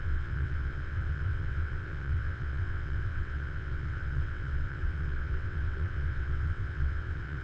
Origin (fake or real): fake